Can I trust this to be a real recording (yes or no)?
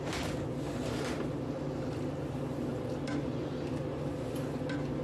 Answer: yes